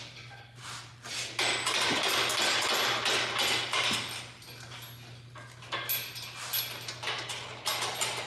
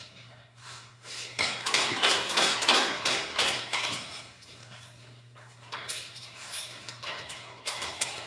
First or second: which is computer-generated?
second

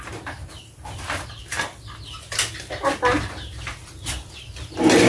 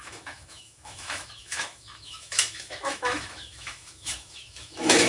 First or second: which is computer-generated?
second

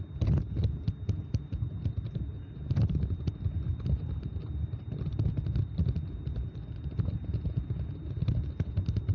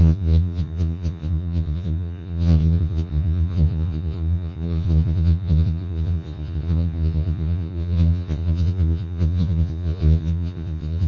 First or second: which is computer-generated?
second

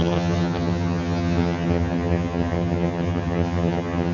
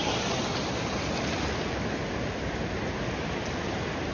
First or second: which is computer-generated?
first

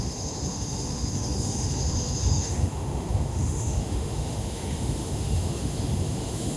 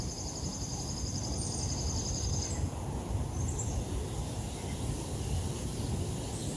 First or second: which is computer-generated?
first